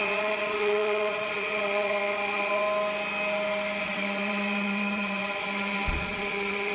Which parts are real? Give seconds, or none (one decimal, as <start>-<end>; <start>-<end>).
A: 2.6-3.8